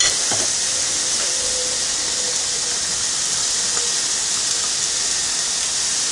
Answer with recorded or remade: recorded